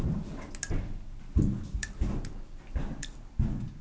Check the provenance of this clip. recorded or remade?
recorded